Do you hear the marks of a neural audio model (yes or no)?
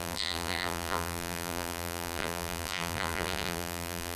yes